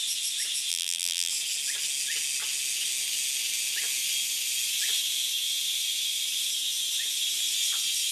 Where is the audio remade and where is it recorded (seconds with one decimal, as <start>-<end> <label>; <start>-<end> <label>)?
0.0-0.7 recorded; 0.7-1.3 remade; 1.3-8.1 recorded